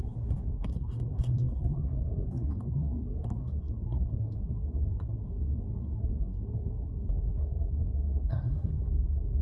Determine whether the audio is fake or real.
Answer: fake